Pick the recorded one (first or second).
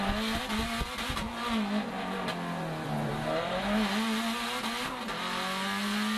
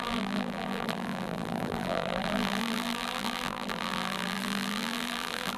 first